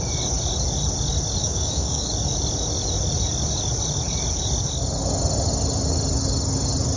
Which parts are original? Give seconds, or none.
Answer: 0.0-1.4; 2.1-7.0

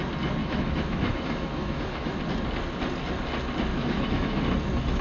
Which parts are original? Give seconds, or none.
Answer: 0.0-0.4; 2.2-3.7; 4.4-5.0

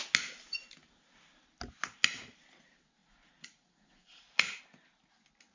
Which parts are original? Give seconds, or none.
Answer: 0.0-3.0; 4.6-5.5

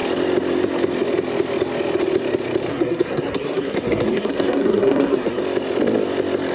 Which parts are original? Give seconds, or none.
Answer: 0.0-2.7; 5.4-6.5

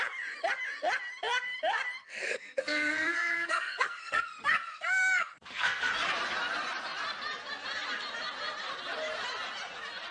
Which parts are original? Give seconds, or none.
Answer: 0.0-2.0; 5.9-10.1